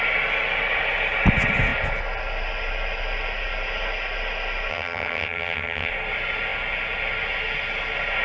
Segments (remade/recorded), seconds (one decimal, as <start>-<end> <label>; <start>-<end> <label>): 0.0-4.7 recorded; 4.7-5.9 remade; 5.9-8.2 recorded